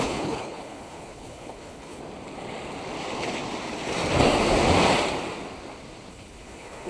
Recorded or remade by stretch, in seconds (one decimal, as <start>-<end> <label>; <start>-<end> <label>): 0.0-2.0 remade; 2.0-6.1 recorded; 6.1-6.9 remade